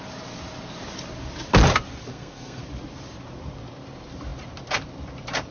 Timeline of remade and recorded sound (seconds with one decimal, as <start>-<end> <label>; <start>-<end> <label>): 0.0-2.1 recorded; 2.1-2.6 remade; 2.6-5.5 recorded